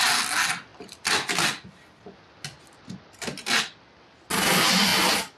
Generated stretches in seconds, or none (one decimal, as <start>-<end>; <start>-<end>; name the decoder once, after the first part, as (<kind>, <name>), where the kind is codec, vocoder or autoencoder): none